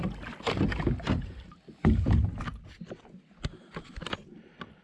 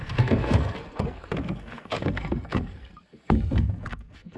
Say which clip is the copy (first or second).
second